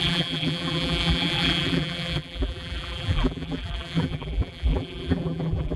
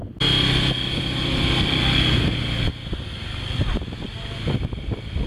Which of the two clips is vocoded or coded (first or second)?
first